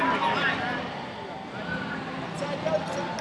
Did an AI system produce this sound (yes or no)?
no